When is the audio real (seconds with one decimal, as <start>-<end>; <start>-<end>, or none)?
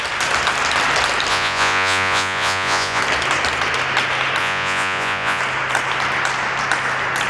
0.0-1.3; 3.0-4.4; 5.4-7.3